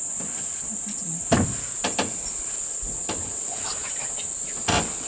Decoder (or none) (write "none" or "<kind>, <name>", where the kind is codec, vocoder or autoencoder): none